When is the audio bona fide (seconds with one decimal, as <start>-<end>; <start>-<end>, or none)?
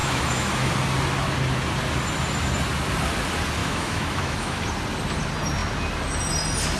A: 0.7-3.6; 4.6-6.8